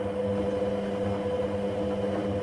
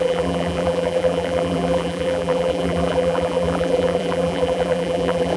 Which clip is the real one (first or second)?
first